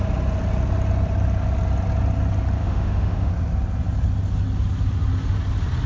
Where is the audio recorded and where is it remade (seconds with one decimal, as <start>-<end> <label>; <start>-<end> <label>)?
0.0-2.6 recorded; 2.6-3.3 remade; 3.3-5.9 recorded